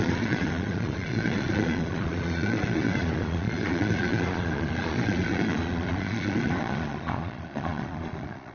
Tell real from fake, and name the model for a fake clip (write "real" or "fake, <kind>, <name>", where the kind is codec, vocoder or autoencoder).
fake, vocoder, Vocos